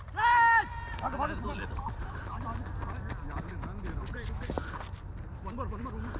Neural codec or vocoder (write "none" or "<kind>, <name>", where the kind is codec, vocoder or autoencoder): none